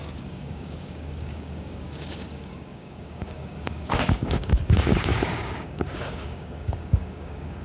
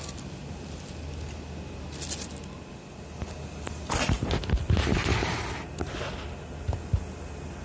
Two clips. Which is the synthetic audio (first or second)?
first